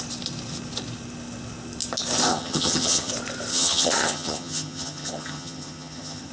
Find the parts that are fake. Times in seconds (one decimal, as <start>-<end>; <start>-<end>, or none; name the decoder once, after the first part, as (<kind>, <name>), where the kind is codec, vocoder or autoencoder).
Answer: 2.3-3.1 (vocoder, HiFi-GAN); 3.5-6.3